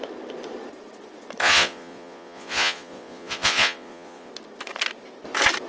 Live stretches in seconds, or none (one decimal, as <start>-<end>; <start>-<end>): 0.0-1.4; 4.3-5.7